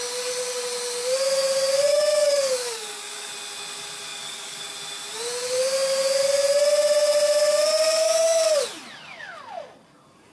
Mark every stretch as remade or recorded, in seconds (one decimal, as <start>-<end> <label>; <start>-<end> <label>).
0.0-1.9 recorded; 1.9-3.3 remade; 3.3-4.1 recorded; 4.1-4.6 remade; 4.6-10.3 recorded